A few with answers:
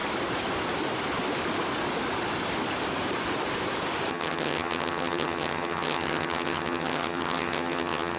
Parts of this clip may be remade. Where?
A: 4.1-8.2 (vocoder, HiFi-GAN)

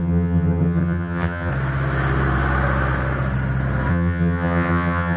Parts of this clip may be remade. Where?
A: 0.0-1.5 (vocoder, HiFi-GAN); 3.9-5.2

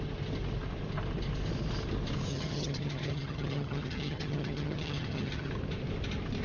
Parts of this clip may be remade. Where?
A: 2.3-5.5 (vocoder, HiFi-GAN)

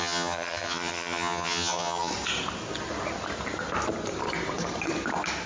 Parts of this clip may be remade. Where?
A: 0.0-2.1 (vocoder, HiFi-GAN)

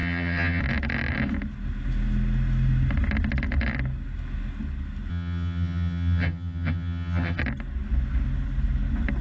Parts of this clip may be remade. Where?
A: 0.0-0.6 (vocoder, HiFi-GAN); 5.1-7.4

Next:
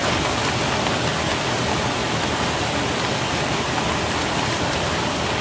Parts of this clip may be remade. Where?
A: none

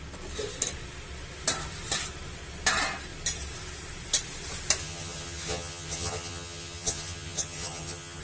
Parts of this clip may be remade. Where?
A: 4.8-8.2 (vocoder, HiFi-GAN)

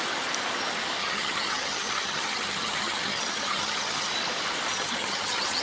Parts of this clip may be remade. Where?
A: 1.0-4.1 (vocoder, HiFi-GAN); 4.7-5.6